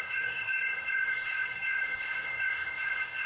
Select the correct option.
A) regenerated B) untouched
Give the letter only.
A